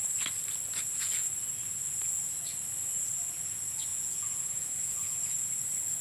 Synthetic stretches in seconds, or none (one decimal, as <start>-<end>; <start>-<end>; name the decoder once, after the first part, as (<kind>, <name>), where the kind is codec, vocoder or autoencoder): 3.9-5.5 (vocoder, Vocos)